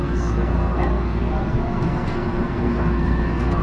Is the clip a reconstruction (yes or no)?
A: yes